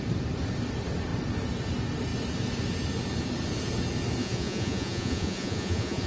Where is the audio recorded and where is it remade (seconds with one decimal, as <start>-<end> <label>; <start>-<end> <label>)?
0.0-4.2 recorded; 4.2-6.1 remade